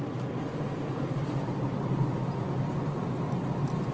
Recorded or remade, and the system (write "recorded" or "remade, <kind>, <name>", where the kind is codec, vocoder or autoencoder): recorded